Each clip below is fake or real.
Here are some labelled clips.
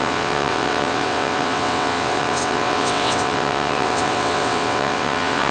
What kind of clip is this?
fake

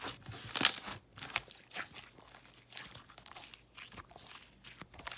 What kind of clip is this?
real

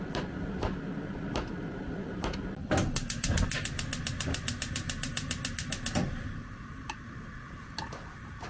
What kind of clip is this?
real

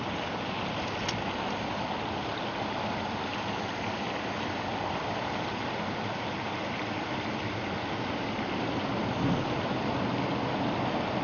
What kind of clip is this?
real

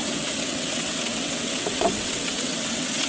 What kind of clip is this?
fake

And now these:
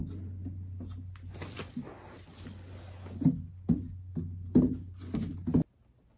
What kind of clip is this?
real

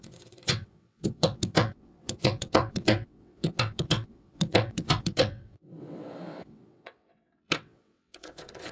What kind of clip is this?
fake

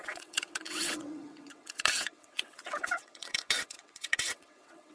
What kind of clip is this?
fake